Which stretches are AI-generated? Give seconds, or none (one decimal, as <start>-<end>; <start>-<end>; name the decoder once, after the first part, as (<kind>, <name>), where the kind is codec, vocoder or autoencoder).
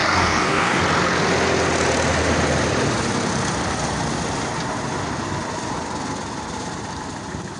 0.0-0.8 (codec, DAC)